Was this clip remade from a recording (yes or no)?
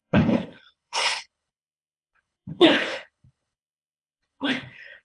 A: yes